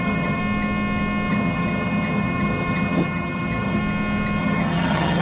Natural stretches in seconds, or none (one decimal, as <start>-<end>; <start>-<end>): 0.4-1.3; 3.8-4.4